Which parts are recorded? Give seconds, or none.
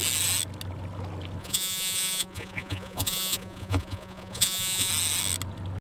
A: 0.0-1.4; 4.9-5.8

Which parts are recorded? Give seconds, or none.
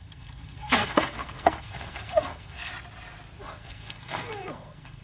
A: 2.7-3.4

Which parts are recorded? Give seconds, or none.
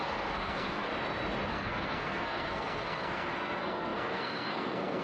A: 0.9-1.5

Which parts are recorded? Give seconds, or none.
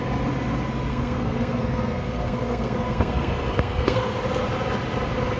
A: 0.0-0.9; 4.1-5.4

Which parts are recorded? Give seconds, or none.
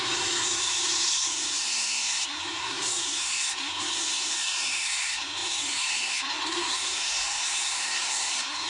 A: none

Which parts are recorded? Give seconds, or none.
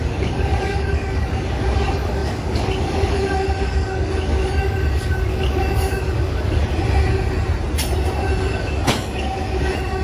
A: 6.6-8.3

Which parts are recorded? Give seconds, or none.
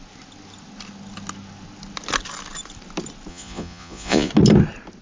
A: 0.0-3.3; 4.3-5.0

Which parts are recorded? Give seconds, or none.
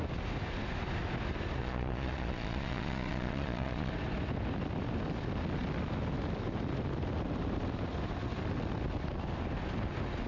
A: 0.0-1.6; 3.9-10.3